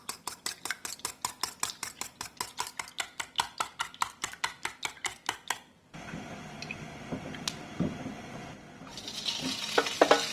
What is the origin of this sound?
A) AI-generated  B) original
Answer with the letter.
B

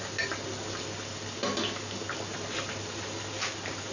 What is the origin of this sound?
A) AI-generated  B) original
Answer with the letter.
B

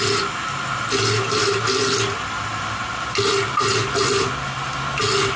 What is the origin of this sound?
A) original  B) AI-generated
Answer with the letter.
A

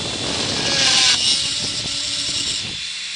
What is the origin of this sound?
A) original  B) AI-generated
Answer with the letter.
A